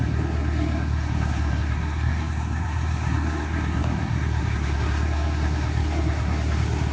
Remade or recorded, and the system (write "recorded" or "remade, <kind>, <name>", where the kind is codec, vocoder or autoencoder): remade, codec, SNAC